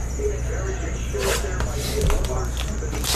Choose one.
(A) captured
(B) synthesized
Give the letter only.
B